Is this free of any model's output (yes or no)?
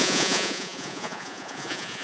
no